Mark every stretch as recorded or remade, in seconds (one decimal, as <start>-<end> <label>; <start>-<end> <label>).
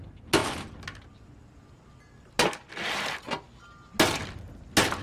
0.0-5.0 recorded